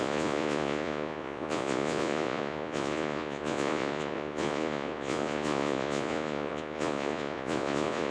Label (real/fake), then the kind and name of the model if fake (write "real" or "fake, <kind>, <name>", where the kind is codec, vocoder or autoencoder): fake, vocoder, Vocos